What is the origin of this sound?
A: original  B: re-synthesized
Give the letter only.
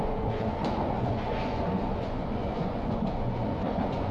B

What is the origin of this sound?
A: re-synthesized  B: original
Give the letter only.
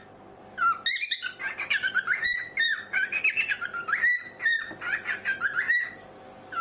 B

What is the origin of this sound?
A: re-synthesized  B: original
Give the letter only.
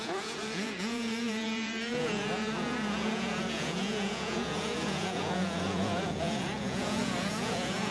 A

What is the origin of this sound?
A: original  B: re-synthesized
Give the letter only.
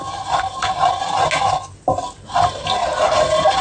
A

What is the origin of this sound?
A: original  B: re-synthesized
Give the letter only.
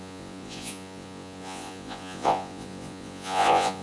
B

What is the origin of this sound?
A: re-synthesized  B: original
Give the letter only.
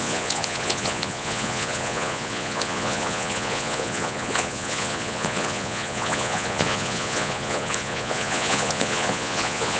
A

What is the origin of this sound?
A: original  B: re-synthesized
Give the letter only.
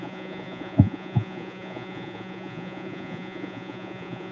B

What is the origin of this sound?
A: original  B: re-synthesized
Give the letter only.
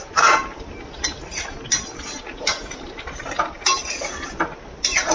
A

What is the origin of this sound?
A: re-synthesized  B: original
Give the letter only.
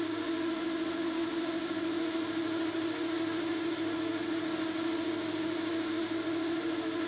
B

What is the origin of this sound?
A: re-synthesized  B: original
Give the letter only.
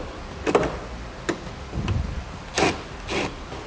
B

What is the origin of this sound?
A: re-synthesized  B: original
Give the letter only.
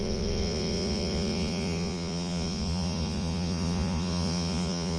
A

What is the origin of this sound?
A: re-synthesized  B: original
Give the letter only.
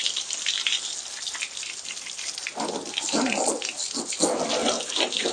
B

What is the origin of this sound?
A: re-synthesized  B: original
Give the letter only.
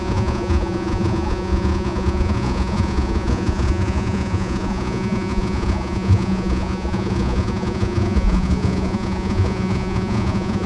A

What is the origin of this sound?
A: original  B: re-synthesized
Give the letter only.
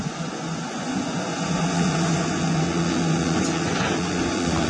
B